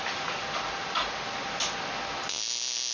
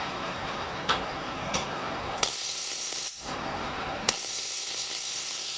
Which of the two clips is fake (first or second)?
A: second